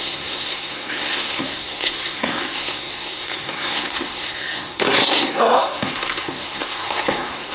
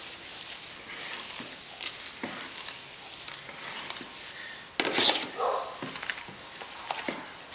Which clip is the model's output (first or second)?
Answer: first